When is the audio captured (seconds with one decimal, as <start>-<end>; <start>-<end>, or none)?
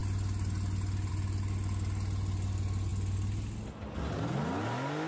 0.0-5.1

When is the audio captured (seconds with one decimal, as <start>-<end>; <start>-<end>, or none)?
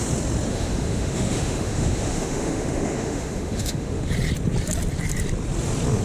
0.0-0.5; 4.1-6.0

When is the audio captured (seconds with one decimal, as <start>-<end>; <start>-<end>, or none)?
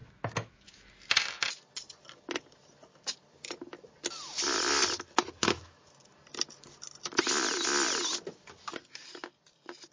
0.8-5.4; 5.9-9.9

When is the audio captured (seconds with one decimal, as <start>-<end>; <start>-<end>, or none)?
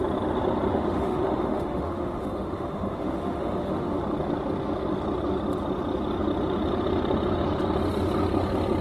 0.0-0.7; 4.0-8.8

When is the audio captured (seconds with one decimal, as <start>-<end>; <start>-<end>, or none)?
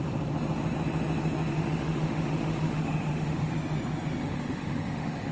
0.0-1.5; 3.5-4.2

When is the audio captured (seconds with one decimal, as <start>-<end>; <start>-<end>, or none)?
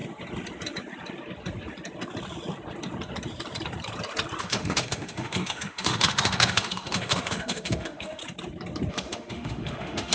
0.0-4.4; 8.2-8.9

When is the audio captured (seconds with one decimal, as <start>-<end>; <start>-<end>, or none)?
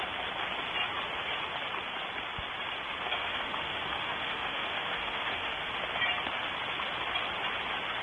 0.0-3.1; 5.7-8.0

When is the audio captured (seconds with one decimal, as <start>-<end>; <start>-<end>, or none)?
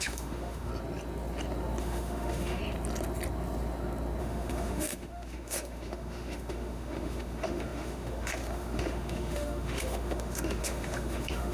0.7-1.8; 2.6-4.2